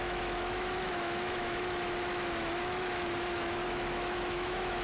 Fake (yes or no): yes